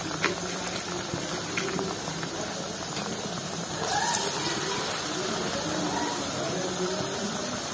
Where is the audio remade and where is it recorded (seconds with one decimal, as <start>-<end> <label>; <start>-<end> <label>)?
0.0-7.7 recorded